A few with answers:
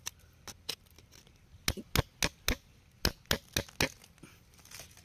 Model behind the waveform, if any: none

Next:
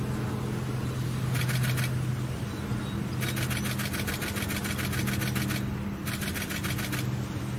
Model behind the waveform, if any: none